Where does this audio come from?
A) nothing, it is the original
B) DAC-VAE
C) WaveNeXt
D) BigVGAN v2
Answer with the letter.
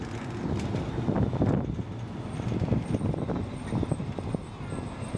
A